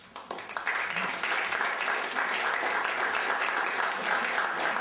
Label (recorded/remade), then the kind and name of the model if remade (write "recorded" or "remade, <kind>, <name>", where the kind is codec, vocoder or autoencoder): recorded